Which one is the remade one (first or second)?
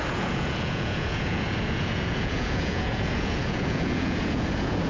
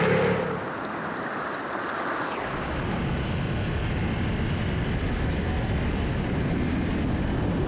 first